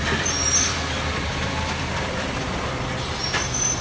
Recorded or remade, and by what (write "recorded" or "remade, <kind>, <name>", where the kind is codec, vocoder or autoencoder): remade, vocoder, BigVGAN v2